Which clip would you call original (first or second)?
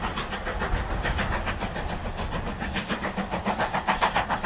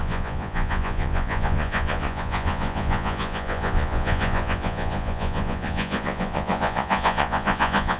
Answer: first